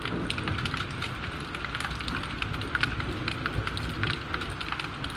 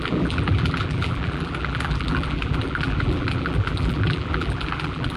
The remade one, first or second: second